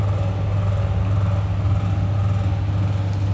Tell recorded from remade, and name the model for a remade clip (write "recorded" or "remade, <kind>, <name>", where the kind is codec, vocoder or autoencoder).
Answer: recorded